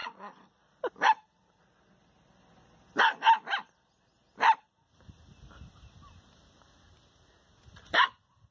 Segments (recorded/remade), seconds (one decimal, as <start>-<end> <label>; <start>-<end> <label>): 0.0-0.8 remade; 0.8-8.5 recorded